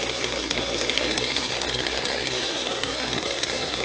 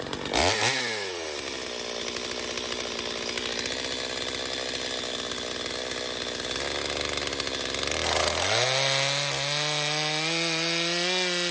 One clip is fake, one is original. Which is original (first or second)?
second